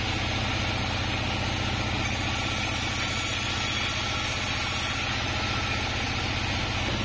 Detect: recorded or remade recorded